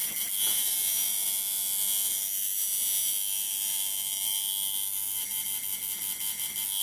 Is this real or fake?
real